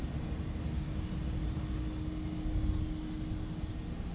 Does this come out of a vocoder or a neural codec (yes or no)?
no